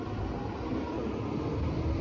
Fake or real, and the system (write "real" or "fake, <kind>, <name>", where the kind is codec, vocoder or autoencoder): real